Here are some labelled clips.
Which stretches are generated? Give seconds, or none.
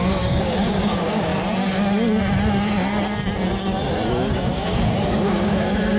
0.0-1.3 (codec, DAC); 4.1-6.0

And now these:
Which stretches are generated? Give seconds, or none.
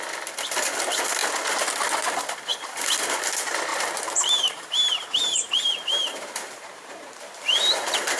3.7-8.2 (vocoder, BigVGAN v2)